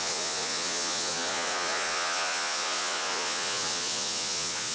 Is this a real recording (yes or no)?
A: no